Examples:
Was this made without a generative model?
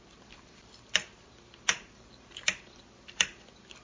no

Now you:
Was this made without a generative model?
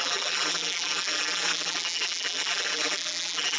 no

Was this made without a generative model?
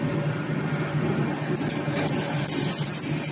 yes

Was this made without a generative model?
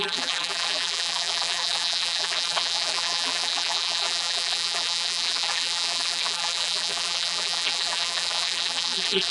no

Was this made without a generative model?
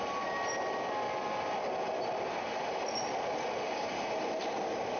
yes